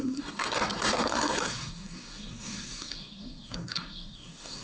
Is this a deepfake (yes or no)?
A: yes